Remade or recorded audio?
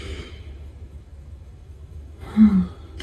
remade